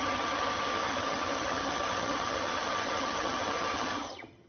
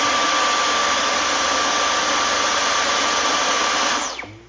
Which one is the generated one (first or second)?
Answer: first